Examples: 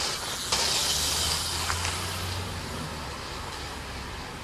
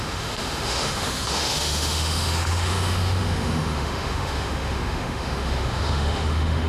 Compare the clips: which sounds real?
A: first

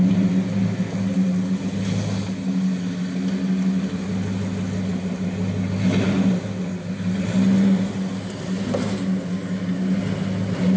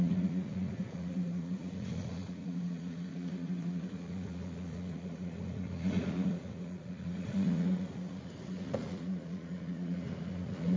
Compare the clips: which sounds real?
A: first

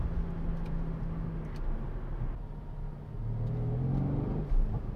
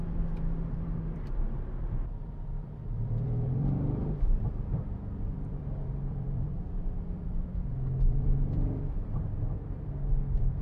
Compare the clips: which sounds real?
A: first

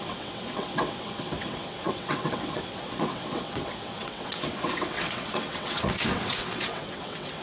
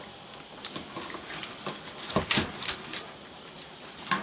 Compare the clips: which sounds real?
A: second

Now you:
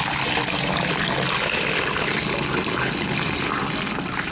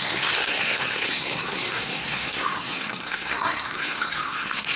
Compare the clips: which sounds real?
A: first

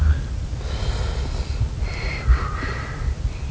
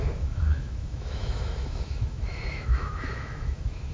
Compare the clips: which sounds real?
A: first